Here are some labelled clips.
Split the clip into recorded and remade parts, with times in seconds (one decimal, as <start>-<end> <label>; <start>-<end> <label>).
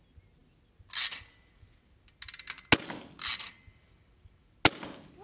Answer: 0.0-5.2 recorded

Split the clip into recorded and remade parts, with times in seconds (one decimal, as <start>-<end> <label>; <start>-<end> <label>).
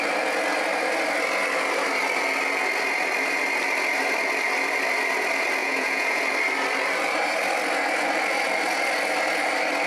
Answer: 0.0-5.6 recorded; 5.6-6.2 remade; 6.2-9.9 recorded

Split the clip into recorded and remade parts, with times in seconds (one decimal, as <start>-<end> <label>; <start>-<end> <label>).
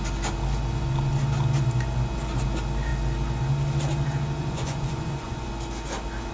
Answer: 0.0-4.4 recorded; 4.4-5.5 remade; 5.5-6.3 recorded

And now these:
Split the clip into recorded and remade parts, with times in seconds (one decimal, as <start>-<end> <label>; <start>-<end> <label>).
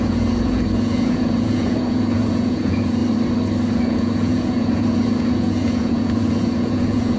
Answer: 0.0-3.0 remade; 3.0-3.7 recorded; 3.7-7.2 remade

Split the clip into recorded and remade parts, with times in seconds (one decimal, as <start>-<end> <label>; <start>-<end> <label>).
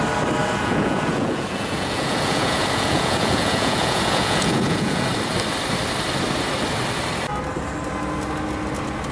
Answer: 0.0-0.4 recorded; 0.4-5.1 remade; 5.1-9.1 recorded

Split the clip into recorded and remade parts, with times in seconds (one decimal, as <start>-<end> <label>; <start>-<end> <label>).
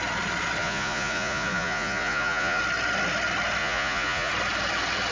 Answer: 0.0-0.6 recorded; 0.6-2.6 remade; 2.6-3.6 recorded; 3.6-4.3 remade; 4.3-5.1 recorded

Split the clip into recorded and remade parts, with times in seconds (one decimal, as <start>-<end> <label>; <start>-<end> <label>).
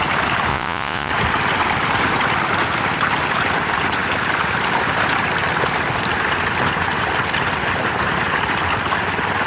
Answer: 0.0-0.5 recorded; 0.5-1.1 remade; 1.1-9.5 recorded